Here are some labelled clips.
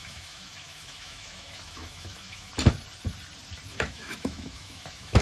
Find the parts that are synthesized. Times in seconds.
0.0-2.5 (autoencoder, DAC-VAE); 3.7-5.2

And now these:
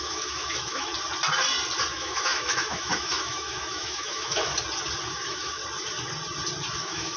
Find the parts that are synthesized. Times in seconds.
0.0-0.9 (autoencoder, DAC-VAE); 1.9-4.5; 5.1-5.6; 6.8-7.2

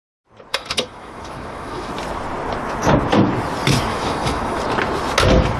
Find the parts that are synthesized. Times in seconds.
0.5-1.9 (autoencoder, DAC-VAE); 3.9-4.6

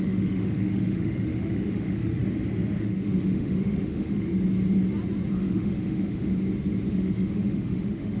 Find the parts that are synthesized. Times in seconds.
0.0-2.2 (autoencoder, DAC-VAE); 2.8-4.3; 5.3-6.3; 6.9-8.2

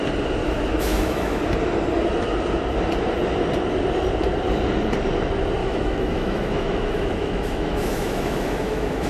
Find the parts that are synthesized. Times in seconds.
0.4-1.4 (autoencoder, DAC-VAE); 5.6-9.1

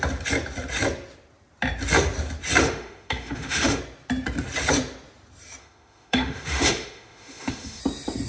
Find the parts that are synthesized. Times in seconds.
2.6-3.8 (autoencoder, DAC-VAE); 5.6-7.8

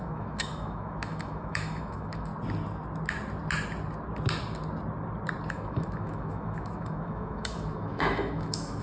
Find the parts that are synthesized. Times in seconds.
0.0-2.3 (autoencoder, DAC-VAE); 5.5-8.8